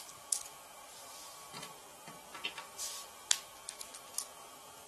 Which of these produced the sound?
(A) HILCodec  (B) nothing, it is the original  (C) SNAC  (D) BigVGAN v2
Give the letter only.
B